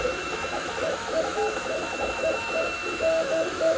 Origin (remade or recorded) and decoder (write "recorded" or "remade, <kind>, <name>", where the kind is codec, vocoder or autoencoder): remade, autoencoder, DAC-VAE